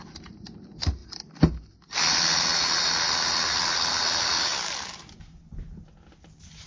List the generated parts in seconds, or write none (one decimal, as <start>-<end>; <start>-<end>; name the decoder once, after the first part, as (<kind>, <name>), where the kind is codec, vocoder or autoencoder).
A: none